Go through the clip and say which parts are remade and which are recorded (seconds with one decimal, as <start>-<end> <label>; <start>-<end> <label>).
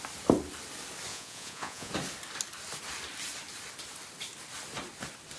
0.0-1.1 recorded; 1.1-1.9 remade; 1.9-5.4 recorded